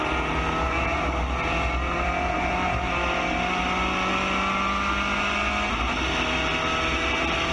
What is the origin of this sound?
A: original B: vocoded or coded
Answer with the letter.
A